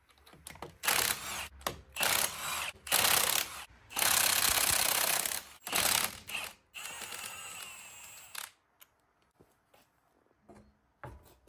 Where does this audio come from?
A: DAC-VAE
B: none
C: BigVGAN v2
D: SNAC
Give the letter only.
B